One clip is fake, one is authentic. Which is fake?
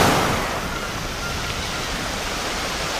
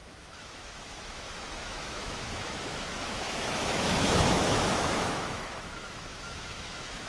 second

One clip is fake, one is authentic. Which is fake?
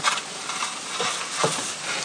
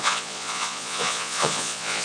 second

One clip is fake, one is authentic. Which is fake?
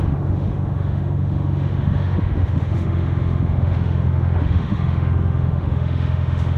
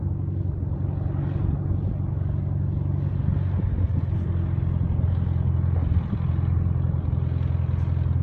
first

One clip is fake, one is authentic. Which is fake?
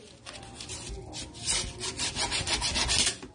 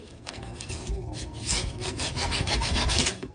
second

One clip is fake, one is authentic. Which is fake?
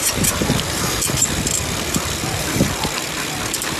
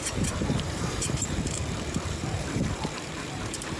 second